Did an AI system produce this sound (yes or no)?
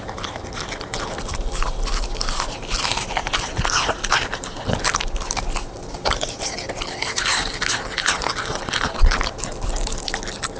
no